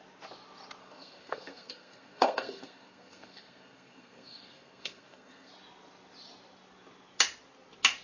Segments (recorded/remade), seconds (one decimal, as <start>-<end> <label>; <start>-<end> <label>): 0.0-0.8 recorded; 0.8-5.5 remade; 5.5-8.0 recorded